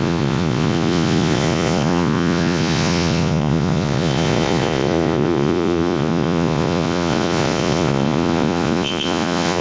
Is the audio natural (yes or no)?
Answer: no